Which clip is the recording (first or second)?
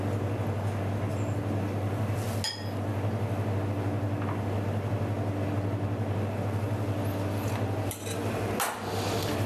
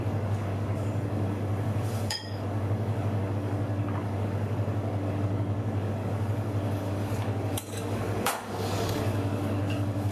first